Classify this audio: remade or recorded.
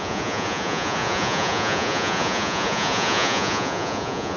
remade